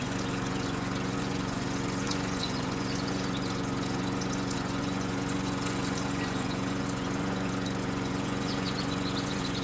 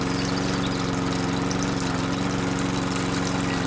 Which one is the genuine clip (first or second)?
second